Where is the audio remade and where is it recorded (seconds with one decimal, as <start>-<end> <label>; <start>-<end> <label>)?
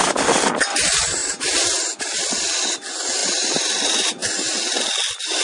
0.0-5.4 recorded